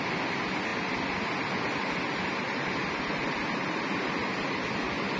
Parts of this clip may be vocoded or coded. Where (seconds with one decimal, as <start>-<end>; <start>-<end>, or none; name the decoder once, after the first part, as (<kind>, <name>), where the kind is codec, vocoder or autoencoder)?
none